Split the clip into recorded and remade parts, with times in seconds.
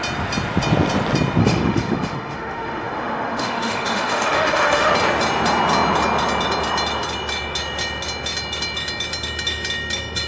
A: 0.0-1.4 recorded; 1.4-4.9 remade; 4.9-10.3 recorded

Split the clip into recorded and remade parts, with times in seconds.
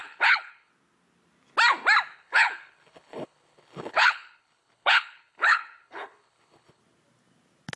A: 0.0-0.7 remade; 0.7-2.1 recorded; 2.1-6.8 remade; 6.8-7.8 recorded